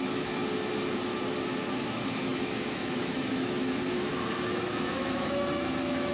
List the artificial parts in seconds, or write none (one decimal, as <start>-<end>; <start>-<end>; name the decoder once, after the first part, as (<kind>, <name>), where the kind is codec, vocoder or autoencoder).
0.0-0.4 (autoencoder, DAC-VAE); 1.7-6.1